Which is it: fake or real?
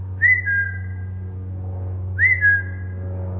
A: real